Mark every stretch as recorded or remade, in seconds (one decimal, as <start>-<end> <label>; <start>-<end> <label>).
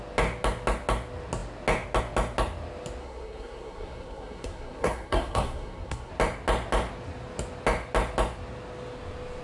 0.0-3.0 recorded; 3.0-6.1 remade; 6.1-9.4 recorded